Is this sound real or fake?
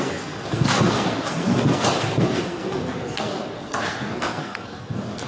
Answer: fake